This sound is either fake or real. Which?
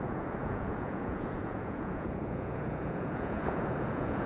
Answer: fake